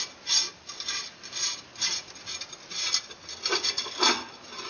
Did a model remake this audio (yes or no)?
no